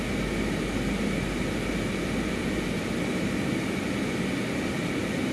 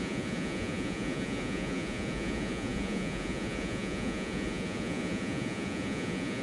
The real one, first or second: first